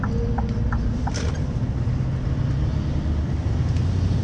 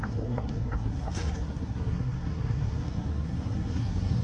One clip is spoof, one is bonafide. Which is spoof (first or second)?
second